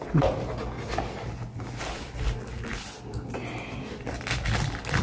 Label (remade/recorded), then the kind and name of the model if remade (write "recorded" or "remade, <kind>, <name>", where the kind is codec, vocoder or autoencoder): recorded